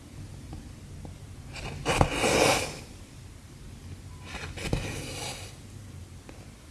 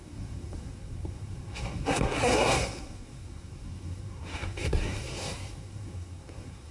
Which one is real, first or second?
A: first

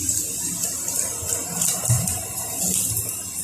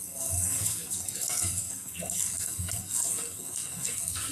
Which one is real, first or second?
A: first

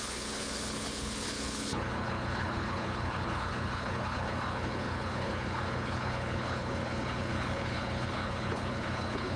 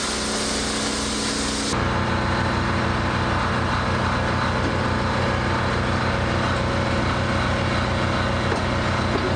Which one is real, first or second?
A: second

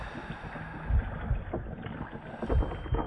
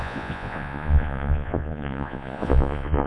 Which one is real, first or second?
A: first